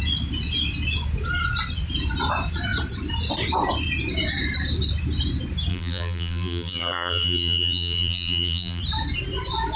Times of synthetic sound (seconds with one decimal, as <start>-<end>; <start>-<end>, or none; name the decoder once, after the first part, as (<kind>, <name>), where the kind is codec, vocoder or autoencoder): 5.7-8.8 (vocoder, BigVGAN v2)